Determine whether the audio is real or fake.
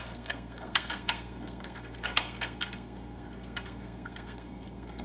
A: fake